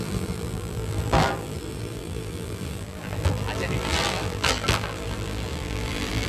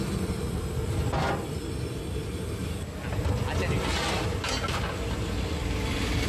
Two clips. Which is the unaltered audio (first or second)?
second